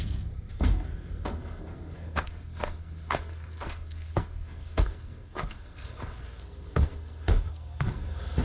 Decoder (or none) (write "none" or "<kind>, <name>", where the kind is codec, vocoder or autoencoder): codec, SNAC